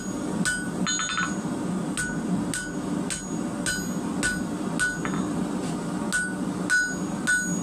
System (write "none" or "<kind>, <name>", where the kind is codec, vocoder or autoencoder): none